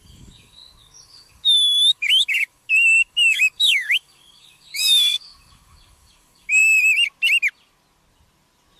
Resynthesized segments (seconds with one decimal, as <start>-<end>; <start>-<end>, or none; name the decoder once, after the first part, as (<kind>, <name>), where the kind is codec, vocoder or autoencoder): 0.0-6.6 (codec, DAC)